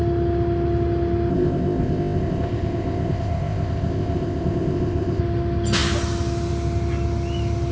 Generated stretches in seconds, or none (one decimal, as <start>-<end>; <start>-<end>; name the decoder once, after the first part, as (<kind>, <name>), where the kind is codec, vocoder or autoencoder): 1.3-5.2 (codec, ZipCodec)